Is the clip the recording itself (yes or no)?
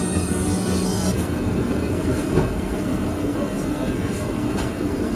no